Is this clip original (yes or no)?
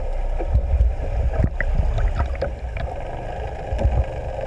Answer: yes